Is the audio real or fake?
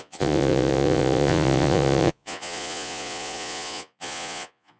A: fake